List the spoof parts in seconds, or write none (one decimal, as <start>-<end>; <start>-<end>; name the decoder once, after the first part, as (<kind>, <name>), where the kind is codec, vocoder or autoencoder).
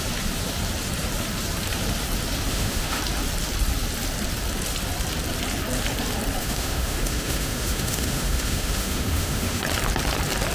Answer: 2.5-3.0 (autoencoder, DAC-VAE); 6.4-9.6